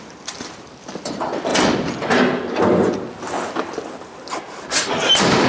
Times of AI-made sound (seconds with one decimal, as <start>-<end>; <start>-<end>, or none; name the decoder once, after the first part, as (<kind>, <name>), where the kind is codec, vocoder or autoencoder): none